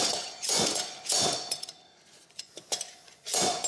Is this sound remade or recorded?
remade